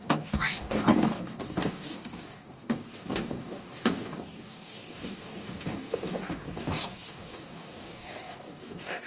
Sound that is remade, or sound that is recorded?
remade